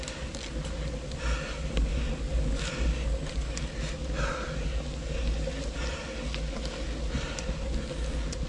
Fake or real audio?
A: real